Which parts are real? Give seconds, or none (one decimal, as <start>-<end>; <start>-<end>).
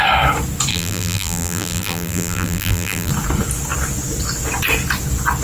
0.0-0.7; 3.1-5.4